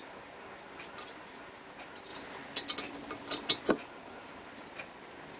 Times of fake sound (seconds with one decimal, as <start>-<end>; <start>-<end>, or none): none

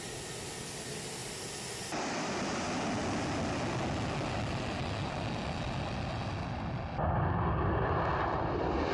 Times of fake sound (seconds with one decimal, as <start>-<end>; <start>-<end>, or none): none

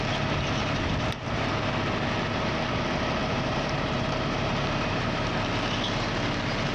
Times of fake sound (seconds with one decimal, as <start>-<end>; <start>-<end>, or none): 0.6-1.5; 3.2-5.3